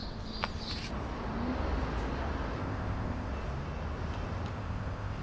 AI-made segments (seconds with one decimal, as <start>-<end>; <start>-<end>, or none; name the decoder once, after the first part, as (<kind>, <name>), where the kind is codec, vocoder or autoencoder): 2.6-3.3 (codec, ZipCodec); 4.5-5.2